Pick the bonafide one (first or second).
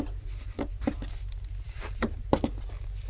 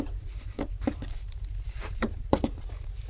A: first